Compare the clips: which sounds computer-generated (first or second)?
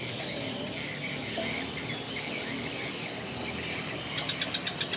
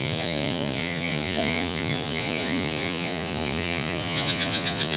second